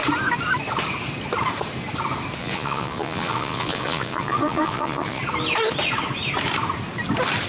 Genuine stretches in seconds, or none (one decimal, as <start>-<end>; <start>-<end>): 0.0-2.4; 5.2-7.5